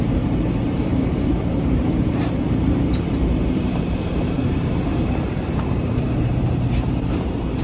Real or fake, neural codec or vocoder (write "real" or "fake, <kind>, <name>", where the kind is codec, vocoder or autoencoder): fake, vocoder, BigVGAN v2